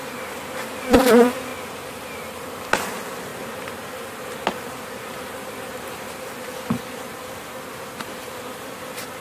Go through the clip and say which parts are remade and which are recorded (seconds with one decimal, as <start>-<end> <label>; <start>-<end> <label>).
0.0-1.5 remade; 1.5-2.9 recorded; 2.9-3.3 remade; 3.3-4.9 recorded; 4.9-9.2 remade

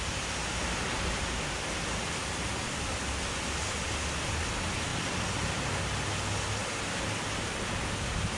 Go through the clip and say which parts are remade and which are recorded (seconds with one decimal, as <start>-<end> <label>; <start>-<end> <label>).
0.0-8.4 recorded

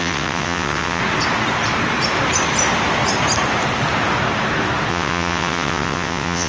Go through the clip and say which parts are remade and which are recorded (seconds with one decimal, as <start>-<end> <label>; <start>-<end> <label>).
0.0-1.0 remade; 1.0-4.9 recorded; 4.9-6.5 remade

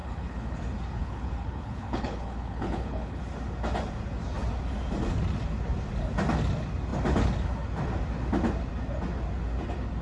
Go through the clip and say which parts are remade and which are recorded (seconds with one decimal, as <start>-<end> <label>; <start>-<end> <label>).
0.0-0.6 remade; 0.6-1.0 recorded; 1.0-3.2 remade; 3.2-10.0 recorded

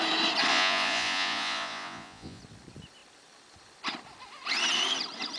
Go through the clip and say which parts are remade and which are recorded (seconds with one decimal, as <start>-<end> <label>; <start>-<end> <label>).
0.0-0.5 recorded; 0.5-2.4 remade; 2.4-5.4 recorded

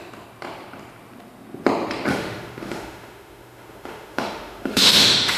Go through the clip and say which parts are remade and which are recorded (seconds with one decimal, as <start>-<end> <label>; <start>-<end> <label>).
0.0-2.1 recorded; 2.1-5.4 remade

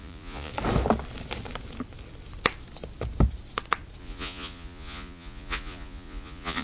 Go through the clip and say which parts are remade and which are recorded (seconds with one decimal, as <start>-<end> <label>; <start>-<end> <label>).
0.0-0.5 remade; 0.5-4.0 recorded; 4.0-6.6 remade